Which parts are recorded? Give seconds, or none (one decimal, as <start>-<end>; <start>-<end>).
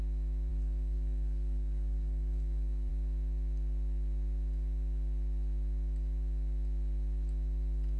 0.0-0.5; 2.9-8.0